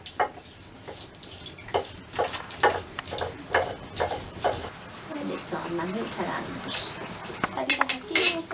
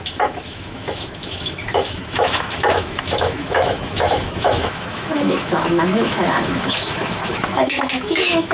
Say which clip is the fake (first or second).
second